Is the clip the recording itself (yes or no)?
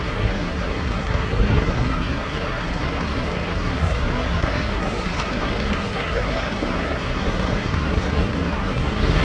no